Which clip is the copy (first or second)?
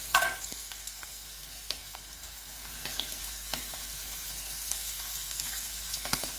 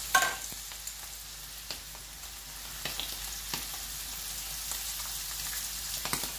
first